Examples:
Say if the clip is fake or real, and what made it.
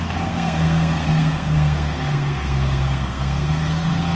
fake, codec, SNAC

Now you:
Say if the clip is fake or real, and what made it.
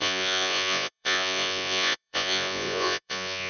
fake, vocoder, Vocos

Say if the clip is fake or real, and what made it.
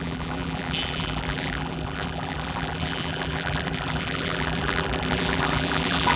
fake, vocoder, BigVGAN v2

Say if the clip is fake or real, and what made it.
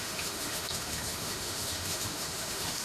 fake, autoencoder, DAC-VAE